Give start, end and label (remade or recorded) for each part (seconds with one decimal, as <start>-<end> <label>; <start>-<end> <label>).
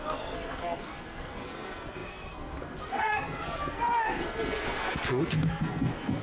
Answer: 0.0-6.2 remade